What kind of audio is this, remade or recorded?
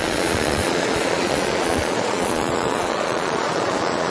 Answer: remade